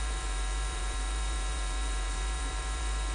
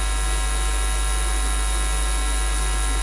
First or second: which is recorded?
second